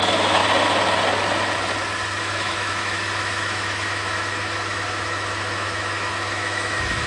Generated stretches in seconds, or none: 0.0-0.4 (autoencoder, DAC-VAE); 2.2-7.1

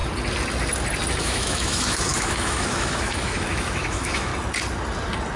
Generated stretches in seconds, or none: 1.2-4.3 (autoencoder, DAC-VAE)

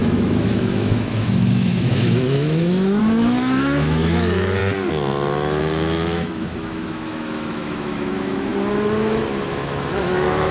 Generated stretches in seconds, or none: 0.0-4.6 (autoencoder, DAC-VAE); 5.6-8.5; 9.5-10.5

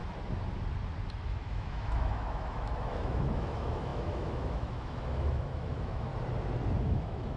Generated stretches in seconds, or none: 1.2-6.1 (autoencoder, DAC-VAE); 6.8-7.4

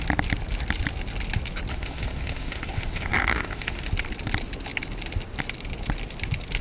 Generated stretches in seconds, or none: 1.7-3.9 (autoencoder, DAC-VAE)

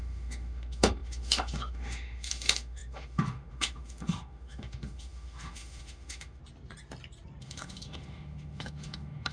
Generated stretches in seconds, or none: 0.0-6.4 (autoencoder, DAC-VAE); 7.4-9.3